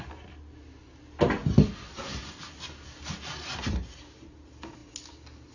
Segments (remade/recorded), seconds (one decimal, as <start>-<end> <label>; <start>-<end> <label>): 0.0-5.5 recorded